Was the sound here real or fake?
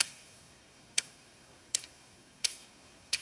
fake